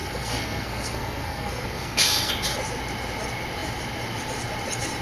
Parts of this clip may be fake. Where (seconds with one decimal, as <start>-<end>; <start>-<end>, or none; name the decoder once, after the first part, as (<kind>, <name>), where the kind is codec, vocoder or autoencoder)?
0.0-2.3 (codec, SNAC)